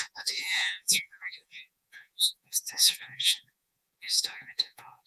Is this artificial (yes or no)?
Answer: yes